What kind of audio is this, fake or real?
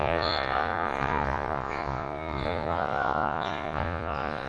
fake